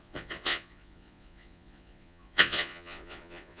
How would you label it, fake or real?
fake